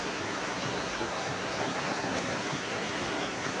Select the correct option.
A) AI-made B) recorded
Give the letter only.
A